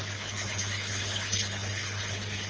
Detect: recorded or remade remade